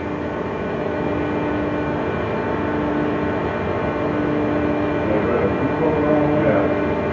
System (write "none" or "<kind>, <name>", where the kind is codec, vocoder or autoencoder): none